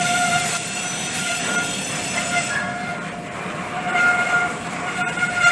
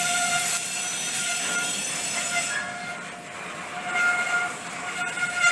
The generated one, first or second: first